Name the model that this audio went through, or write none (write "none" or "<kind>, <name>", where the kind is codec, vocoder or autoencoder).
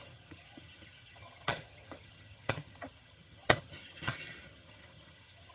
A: vocoder, HiFi-GAN